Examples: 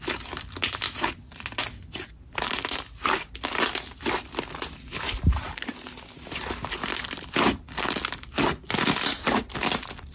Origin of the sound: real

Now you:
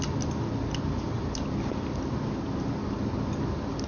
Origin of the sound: real